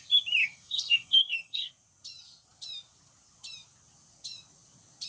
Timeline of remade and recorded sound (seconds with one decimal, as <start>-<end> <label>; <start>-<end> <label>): 0.0-0.4 recorded; 0.4-1.7 remade; 1.7-5.1 recorded